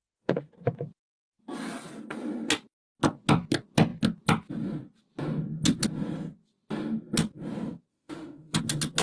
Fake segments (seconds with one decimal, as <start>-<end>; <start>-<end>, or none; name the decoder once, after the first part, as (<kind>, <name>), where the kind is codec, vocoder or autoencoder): 0.0-0.5 (autoencoder, DAC-VAE); 7.9-8.6